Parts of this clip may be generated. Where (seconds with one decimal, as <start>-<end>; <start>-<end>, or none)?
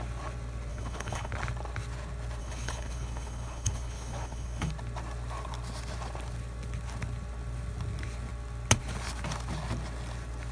0.7-1.3; 2.4-4.7